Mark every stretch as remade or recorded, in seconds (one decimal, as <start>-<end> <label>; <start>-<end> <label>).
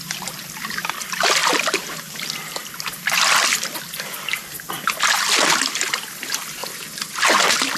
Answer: 0.0-1.4 remade; 1.4-2.1 recorded; 2.1-6.6 remade; 6.6-7.2 recorded; 7.2-7.8 remade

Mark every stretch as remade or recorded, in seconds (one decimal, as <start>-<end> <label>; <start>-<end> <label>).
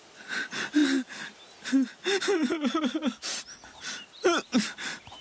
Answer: 0.0-5.2 recorded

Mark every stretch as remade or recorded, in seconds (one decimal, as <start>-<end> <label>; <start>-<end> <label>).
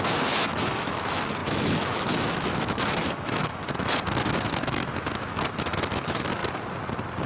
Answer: 0.0-6.4 remade; 6.4-7.3 recorded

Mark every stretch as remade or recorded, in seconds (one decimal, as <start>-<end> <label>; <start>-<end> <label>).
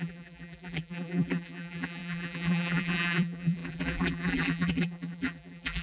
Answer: 0.0-5.8 remade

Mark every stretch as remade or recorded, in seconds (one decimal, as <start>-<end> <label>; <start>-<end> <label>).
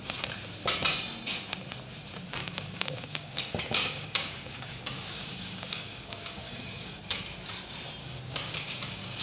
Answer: 0.0-2.4 recorded; 2.4-7.0 remade; 7.0-8.0 recorded; 8.0-9.2 remade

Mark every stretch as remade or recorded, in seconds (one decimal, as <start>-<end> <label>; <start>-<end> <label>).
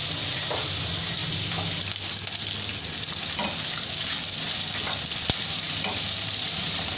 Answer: 0.0-1.2 remade; 1.2-5.4 recorded; 5.4-7.0 remade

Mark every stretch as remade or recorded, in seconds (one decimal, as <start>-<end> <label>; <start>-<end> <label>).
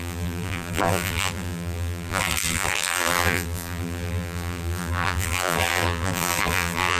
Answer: 0.0-7.0 remade